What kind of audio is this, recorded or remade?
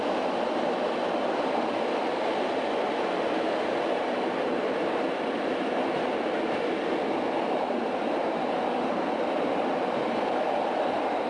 remade